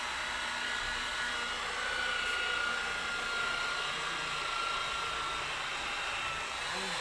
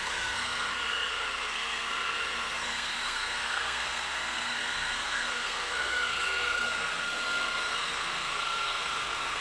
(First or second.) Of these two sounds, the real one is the first